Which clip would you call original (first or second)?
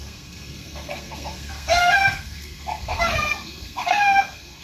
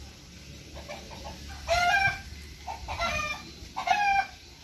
second